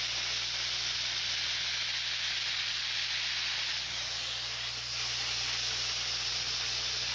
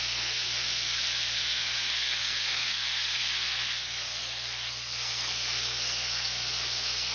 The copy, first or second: second